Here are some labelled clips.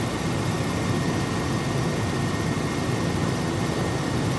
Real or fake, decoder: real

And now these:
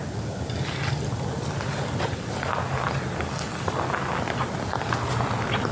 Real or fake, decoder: real